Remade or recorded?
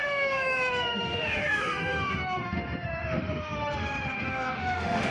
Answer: remade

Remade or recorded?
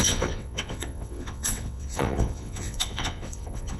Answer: remade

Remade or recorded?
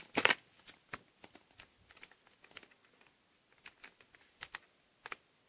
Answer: recorded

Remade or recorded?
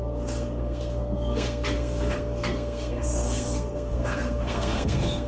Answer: remade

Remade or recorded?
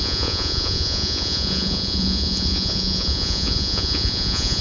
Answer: remade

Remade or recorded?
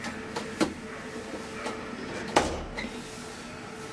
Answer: recorded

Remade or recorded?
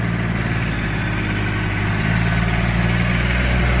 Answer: recorded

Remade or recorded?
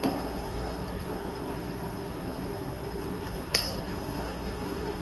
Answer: remade